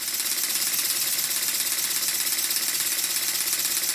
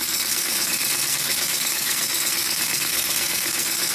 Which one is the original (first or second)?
first